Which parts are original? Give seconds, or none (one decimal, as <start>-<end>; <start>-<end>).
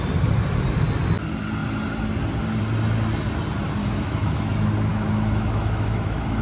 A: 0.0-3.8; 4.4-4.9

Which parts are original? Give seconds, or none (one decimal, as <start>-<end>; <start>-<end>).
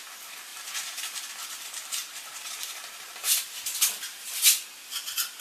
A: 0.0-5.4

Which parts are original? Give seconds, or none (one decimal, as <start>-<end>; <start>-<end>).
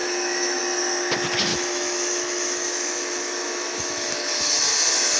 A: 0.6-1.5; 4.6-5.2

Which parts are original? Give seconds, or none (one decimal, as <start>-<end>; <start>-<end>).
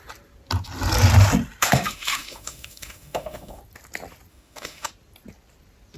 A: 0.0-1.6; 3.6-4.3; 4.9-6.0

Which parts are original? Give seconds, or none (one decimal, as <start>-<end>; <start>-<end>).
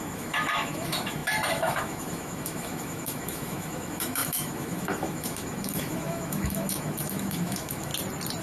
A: 7.9-8.4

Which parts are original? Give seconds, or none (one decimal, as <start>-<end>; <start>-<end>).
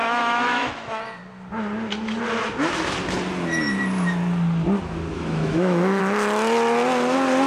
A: 1.0-5.1; 6.0-7.5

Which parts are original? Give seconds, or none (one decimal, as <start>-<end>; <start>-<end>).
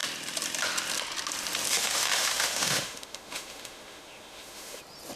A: 0.0-1.7; 4.8-5.2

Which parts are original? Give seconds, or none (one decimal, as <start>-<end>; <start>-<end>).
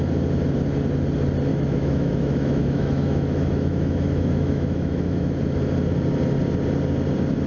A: 0.0-1.5; 5.4-7.5